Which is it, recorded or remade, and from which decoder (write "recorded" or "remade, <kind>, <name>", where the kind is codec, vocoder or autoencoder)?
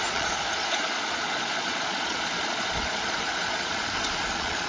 remade, vocoder, Vocos